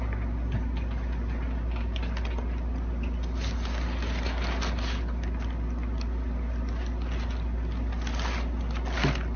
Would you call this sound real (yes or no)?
yes